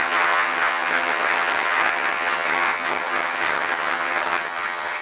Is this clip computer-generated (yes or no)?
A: yes